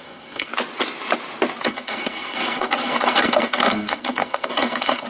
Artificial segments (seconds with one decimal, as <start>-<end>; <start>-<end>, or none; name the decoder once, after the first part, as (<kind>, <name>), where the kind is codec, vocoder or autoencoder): 0.0-0.5 (codec, SNAC); 1.6-5.1